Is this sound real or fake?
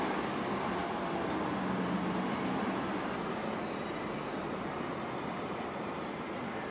real